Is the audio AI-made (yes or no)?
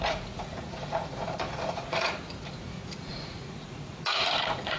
yes